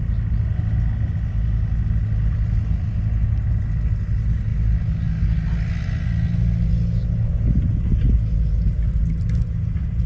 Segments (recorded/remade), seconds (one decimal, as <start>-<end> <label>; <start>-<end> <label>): 0.0-10.1 recorded

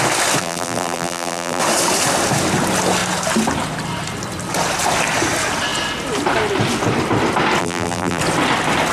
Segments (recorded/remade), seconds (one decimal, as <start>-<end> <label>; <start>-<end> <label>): 0.0-0.4 recorded; 0.4-1.6 remade; 1.6-7.6 recorded; 7.6-8.2 remade; 8.2-8.9 recorded

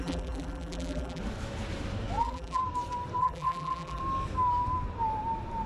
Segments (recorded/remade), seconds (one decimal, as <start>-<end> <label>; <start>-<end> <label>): 0.0-1.2 remade; 1.2-2.2 recorded; 2.2-2.6 remade; 2.6-3.2 recorded; 3.2-4.0 remade; 4.0-5.7 recorded